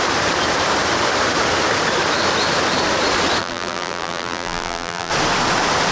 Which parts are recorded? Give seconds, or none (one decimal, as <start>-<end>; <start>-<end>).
0.0-3.4; 5.1-5.9